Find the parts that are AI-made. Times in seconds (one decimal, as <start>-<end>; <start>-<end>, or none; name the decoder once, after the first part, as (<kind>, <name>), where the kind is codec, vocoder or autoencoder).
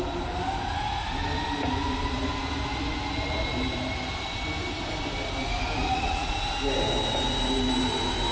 5.8-6.3 (vocoder, Vocos)